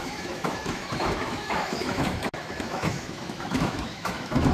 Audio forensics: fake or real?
fake